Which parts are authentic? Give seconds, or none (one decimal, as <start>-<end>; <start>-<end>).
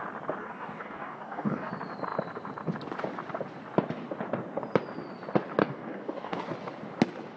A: 0.0-0.4; 1.7-5.6; 6.4-7.4